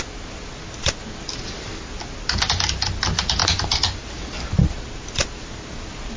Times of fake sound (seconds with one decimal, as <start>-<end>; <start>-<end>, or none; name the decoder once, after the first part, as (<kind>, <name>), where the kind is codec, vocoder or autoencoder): none